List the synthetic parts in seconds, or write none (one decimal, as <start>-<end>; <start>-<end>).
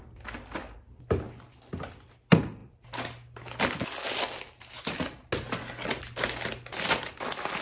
none